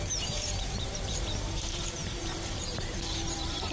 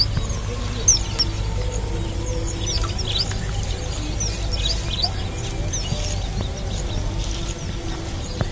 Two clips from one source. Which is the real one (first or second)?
second